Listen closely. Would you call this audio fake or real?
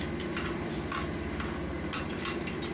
real